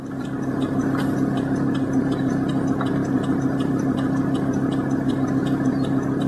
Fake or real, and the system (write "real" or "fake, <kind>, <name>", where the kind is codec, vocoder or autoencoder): real